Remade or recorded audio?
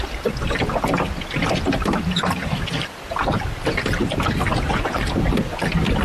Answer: recorded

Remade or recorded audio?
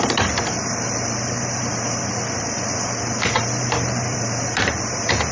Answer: remade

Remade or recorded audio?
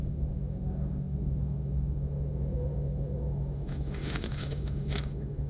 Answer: remade